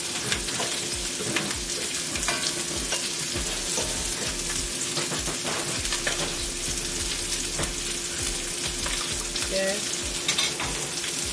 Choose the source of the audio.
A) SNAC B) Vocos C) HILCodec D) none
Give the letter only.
D